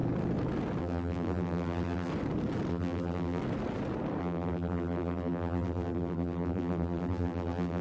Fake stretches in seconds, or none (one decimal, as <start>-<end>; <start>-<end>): 0.8-2.1; 2.7-3.4; 4.2-7.8